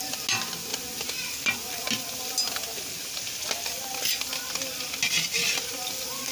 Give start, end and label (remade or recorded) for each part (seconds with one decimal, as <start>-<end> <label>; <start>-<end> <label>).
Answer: 0.0-6.3 recorded